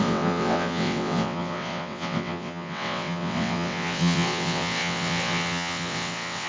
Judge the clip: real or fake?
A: fake